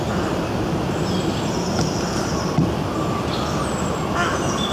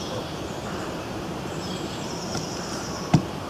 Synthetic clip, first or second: second